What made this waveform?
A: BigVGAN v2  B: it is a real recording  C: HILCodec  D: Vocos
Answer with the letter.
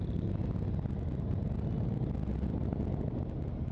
B